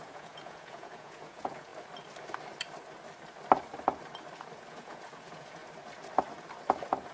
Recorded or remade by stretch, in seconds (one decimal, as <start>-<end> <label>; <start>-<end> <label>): 0.0-1.7 remade; 1.7-4.7 recorded; 4.7-5.6 remade; 5.6-7.1 recorded